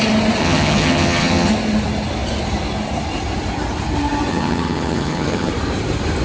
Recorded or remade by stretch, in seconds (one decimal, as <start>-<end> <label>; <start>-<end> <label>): 0.0-0.4 recorded; 0.4-1.5 remade; 1.5-4.3 recorded; 4.3-5.5 remade; 5.5-6.2 recorded